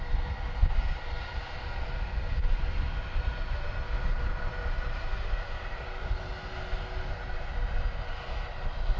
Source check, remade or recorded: recorded